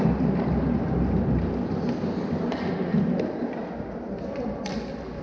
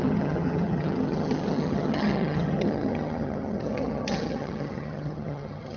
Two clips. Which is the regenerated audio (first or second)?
second